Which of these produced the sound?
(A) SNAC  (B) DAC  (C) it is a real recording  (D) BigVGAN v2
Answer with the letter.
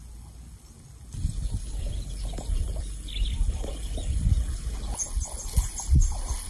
C